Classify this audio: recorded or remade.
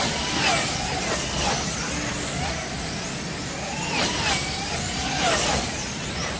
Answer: recorded